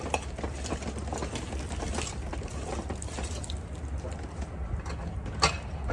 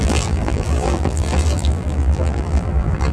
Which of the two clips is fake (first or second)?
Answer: second